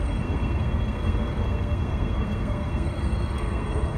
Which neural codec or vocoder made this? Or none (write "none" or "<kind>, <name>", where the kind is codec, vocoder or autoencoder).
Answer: codec, SNAC